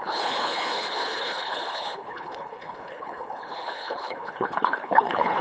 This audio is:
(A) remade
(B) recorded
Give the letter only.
A